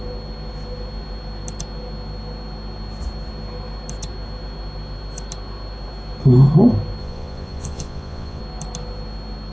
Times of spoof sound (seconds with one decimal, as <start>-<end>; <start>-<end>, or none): 7.0-8.4